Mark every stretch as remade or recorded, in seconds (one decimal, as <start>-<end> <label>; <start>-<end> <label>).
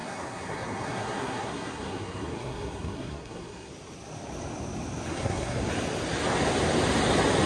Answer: 0.0-3.7 remade; 3.7-5.1 recorded; 5.1-5.7 remade; 5.7-7.5 recorded